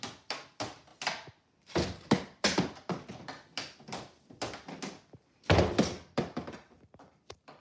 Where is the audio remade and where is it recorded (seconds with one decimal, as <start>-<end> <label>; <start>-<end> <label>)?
0.0-7.6 recorded